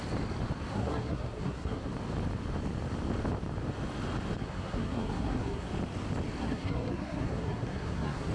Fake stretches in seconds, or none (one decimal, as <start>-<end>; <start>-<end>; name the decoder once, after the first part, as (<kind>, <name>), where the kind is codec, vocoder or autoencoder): 0.7-1.9 (codec, SNAC); 4.4-5.7; 6.4-8.3